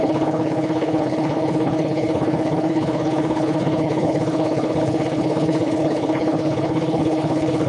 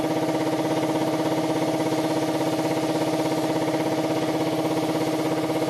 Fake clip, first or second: first